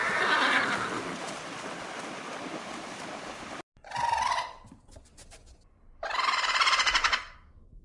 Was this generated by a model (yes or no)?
no